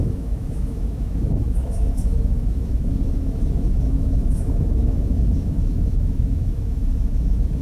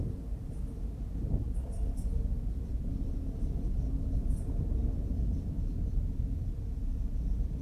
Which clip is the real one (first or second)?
second